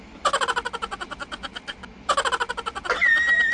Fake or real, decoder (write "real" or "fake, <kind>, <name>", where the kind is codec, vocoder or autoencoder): real